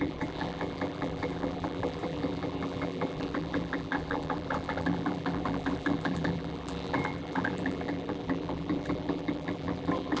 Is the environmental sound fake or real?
fake